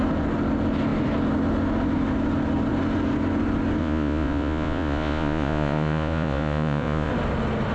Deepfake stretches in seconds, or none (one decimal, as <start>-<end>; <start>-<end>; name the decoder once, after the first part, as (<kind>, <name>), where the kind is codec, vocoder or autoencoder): 3.8-7.1 (vocoder, Vocos)